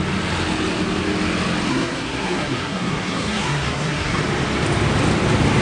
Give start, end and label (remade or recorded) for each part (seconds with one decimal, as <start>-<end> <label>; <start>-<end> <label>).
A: 0.0-1.7 recorded; 1.7-4.2 remade; 4.2-5.6 recorded